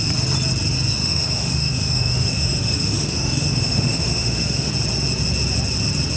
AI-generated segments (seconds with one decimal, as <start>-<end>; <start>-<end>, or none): 1.0-4.7